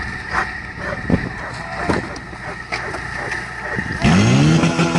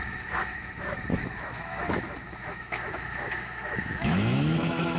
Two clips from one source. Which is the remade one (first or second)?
second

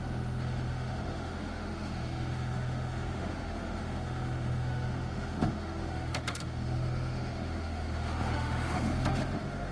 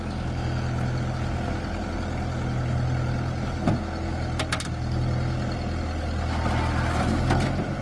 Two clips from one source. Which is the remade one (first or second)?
first